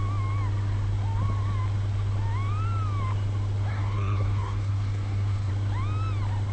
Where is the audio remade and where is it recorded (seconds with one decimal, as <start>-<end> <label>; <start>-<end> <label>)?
0.0-3.7 recorded; 3.7-5.5 remade; 5.5-6.5 recorded